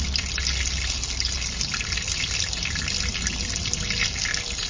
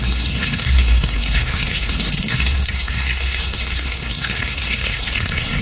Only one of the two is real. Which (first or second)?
first